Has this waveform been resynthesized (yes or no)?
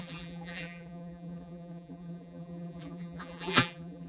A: yes